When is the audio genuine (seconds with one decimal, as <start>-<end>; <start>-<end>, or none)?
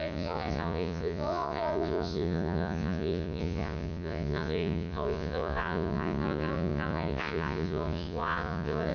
none